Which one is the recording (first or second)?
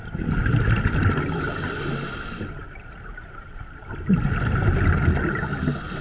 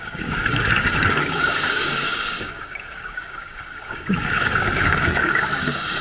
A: first